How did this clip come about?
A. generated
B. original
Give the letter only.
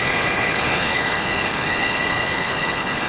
A